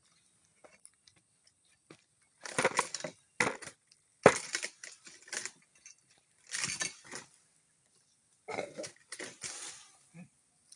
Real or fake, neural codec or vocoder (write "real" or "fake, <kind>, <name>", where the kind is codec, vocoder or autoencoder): real